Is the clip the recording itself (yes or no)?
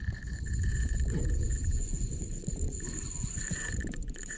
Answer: no